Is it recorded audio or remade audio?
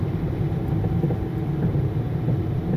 remade